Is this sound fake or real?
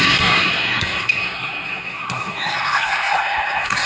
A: fake